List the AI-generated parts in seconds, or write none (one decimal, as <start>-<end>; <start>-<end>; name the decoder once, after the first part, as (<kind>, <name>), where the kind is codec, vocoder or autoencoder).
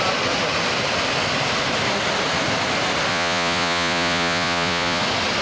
3.1-5.0 (vocoder, Vocos)